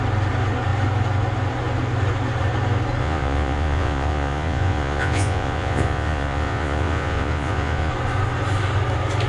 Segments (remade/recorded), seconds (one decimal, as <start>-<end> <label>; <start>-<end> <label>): 0.0-3.0 recorded; 3.0-7.9 remade; 7.9-9.3 recorded